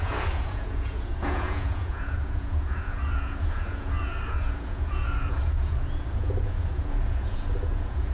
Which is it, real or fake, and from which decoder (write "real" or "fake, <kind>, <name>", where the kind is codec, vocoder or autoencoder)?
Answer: fake, vocoder, Vocos